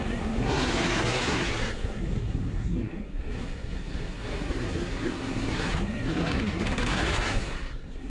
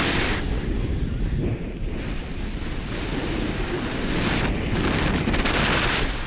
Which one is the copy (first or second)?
first